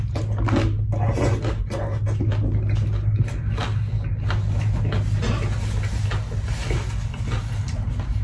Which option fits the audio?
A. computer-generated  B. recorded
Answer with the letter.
B